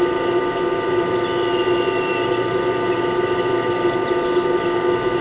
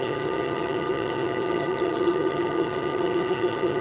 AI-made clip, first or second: second